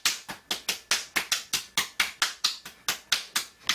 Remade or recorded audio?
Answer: recorded